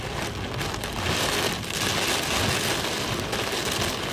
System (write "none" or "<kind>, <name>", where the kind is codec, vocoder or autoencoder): none